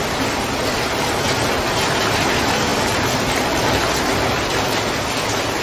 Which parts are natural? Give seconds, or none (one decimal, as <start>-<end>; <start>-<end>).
0.0-5.6